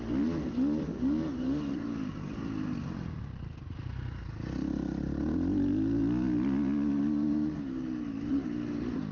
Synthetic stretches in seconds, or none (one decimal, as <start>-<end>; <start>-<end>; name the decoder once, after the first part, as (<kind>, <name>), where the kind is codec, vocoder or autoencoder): none